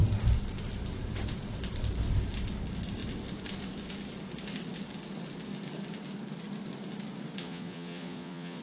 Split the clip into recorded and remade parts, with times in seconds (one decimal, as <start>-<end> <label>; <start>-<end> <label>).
0.0-7.4 recorded; 7.4-8.6 remade